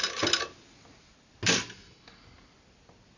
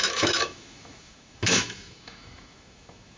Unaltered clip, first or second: first